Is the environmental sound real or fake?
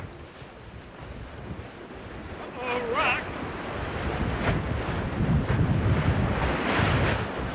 real